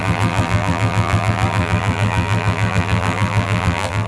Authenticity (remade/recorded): remade